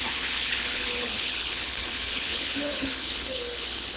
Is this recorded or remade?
remade